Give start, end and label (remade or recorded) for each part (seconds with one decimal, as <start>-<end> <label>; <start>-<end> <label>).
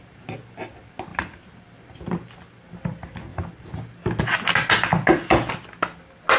0.0-1.1 recorded; 1.1-2.5 remade; 2.5-4.9 recorded; 4.9-5.5 remade; 5.5-6.4 recorded